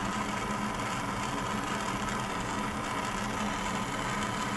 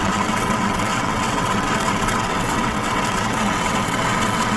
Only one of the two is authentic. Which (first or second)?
first